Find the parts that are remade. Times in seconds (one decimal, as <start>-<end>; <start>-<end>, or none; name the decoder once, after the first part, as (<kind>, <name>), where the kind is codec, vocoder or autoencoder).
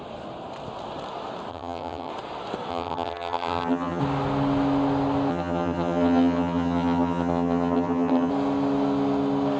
1.5-2.1 (vocoder, HiFi-GAN); 2.7-4.0; 5.3-8.3